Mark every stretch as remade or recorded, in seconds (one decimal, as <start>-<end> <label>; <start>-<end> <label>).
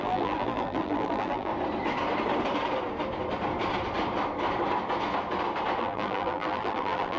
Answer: 0.0-1.5 remade; 1.5-5.8 recorded; 5.8-7.2 remade